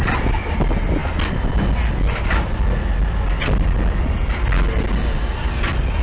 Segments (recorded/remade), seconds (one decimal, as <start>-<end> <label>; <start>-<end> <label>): 0.0-6.0 recorded